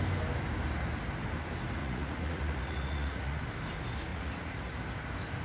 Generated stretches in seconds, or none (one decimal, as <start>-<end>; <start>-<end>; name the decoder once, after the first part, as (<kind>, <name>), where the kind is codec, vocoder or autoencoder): 1.8-3.4 (vocoder, Vocos); 4.1-4.6